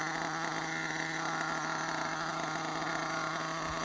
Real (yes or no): yes